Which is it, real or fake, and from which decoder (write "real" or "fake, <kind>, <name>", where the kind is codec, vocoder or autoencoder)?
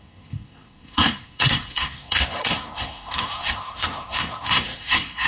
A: fake, codec, SNAC